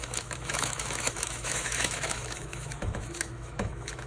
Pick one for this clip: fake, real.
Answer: fake